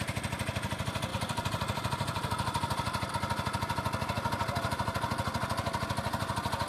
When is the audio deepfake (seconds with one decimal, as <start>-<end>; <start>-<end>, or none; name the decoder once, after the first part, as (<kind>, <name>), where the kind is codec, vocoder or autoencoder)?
1.1-3.1 (vocoder, BigVGAN v2)